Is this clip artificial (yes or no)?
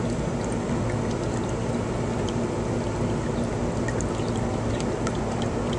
no